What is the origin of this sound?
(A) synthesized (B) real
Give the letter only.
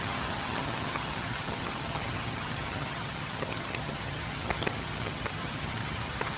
A